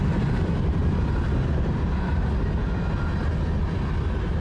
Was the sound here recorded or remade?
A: recorded